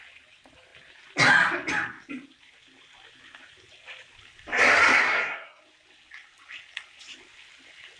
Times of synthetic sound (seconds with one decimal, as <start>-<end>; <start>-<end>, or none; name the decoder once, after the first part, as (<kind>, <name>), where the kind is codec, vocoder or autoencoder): 5.0-5.6 (codec, SNAC)